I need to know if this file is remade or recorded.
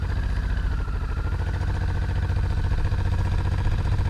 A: recorded